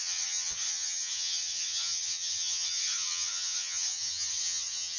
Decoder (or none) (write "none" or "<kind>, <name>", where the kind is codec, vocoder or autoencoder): vocoder, HiFi-GAN